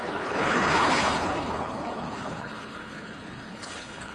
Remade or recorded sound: remade